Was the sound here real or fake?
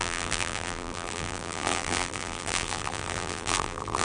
fake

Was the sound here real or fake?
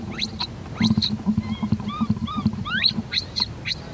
real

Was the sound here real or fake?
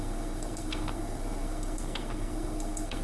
fake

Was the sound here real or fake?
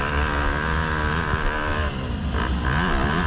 real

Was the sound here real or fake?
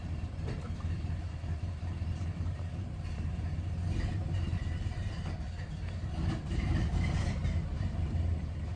fake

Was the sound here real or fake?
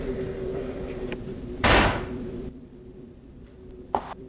fake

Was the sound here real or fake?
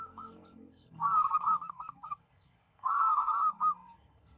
fake